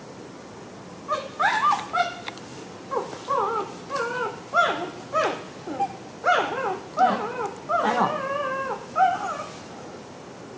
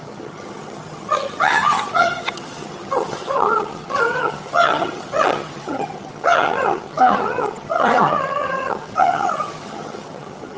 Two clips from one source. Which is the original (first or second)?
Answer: first